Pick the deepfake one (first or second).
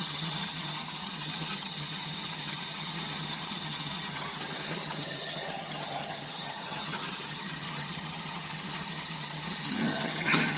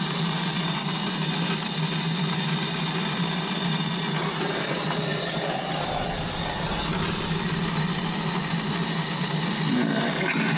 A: first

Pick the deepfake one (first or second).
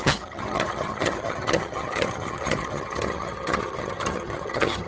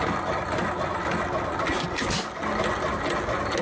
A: first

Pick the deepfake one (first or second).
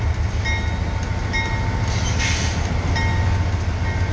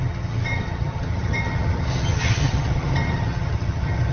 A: second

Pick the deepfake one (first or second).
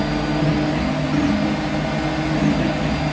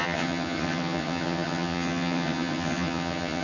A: second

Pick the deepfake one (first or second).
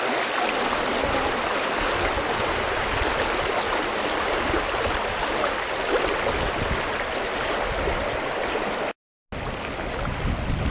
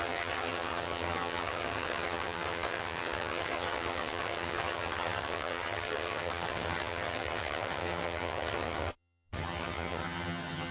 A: second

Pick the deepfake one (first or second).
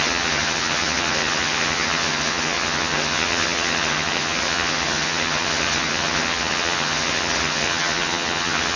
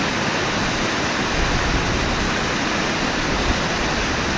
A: first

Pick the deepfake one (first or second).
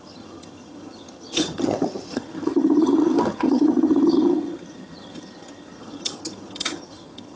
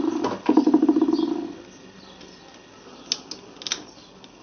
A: first